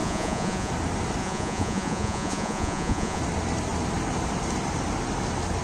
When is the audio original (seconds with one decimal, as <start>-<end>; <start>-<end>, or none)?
0.7-1.2; 3.2-5.6